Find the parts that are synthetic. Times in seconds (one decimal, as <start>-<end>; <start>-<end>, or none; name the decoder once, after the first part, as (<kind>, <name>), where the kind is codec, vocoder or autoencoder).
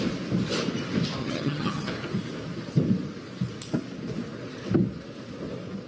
1.2-1.9 (vocoder, HiFi-GAN)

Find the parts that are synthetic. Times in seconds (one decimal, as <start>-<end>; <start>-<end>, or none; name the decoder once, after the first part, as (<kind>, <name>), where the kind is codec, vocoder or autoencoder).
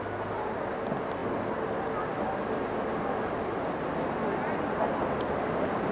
none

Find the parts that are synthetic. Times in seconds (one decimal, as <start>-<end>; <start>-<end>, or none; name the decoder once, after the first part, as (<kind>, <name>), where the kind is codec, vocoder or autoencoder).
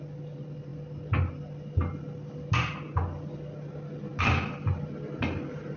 none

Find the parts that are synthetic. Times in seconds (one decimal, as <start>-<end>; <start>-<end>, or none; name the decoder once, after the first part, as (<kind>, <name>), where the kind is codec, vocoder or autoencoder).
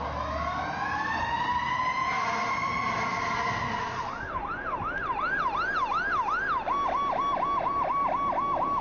none